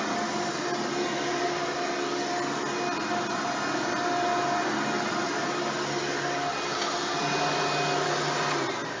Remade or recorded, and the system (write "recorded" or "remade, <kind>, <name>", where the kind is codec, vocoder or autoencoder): recorded